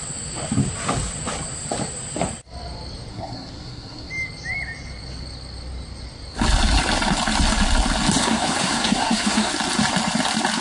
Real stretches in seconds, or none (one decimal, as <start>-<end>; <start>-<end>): 0.0-3.1; 4.1-8.2; 9.5-10.6